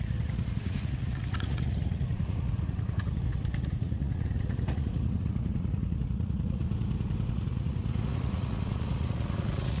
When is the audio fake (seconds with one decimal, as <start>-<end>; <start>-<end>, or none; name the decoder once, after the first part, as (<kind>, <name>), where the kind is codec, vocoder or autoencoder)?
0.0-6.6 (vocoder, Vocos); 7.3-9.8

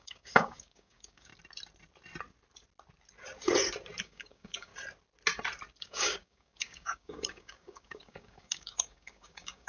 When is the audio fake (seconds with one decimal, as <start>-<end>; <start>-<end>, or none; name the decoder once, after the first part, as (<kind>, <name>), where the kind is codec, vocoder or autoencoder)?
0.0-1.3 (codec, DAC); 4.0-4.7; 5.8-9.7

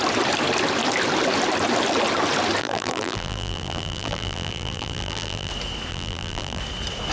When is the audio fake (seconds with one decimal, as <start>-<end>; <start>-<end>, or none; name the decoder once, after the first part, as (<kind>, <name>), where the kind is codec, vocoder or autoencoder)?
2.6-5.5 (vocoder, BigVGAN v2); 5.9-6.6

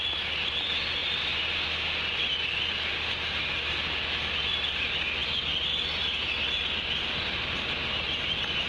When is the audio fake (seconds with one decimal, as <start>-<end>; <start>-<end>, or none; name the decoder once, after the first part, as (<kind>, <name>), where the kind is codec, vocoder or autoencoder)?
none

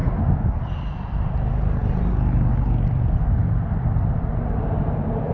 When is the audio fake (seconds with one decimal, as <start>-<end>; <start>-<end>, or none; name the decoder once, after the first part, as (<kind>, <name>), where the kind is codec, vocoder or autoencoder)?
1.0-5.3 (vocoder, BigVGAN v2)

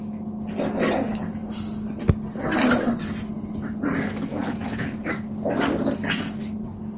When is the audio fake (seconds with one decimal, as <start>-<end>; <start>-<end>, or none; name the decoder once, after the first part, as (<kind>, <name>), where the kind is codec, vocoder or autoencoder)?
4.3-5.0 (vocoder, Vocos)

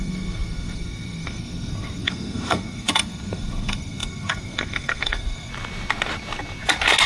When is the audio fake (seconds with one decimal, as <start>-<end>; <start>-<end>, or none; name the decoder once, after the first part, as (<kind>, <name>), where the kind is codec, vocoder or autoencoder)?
0.0-5.5 (codec, SNAC)

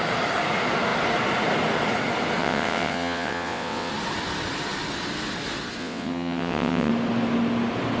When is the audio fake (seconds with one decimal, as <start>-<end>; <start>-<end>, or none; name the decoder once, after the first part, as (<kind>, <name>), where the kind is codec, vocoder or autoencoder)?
2.4-3.9 (vocoder, WaveNeXt); 5.8-6.9